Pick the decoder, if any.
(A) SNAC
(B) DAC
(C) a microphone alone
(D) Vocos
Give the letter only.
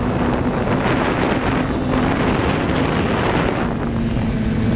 C